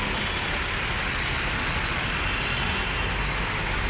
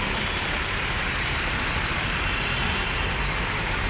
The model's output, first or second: second